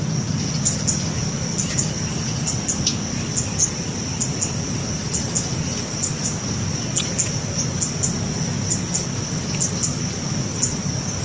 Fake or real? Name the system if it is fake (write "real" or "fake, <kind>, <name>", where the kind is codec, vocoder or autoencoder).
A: real